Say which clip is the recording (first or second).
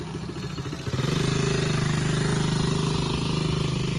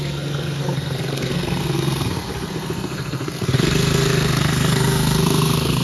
first